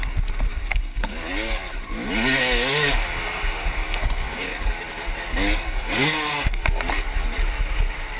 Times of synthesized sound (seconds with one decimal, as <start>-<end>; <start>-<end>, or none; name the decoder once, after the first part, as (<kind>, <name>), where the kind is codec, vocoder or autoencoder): 0.5-1.3 (codec, DAC); 2.4-4.7; 5.3-6.6